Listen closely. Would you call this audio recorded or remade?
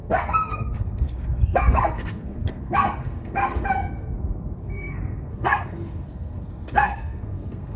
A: remade